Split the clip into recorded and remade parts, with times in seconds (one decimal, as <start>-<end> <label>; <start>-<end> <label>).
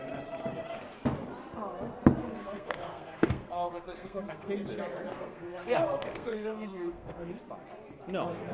0.0-2.2 recorded; 2.2-4.5 remade; 4.5-5.1 recorded; 5.1-7.4 remade; 7.4-8.5 recorded